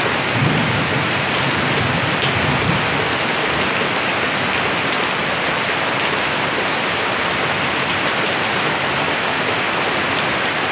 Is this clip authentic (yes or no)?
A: yes